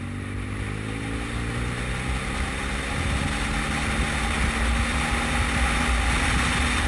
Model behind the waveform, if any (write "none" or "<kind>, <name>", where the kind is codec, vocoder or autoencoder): none